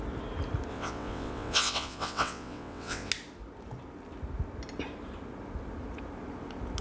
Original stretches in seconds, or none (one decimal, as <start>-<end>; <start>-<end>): 0.0-0.7; 3.1-6.8